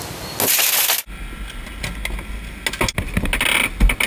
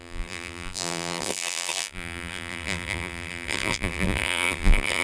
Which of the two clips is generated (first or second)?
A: second